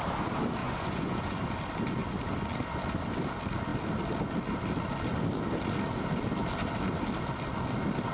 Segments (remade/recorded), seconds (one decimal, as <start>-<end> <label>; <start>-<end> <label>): 0.0-0.6 recorded; 0.6-1.4 remade; 1.4-8.1 recorded

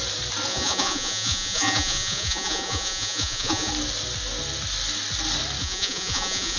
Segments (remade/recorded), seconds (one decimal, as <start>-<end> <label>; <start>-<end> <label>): 0.0-0.5 recorded; 0.5-3.7 remade; 3.7-5.6 recorded; 5.6-6.6 remade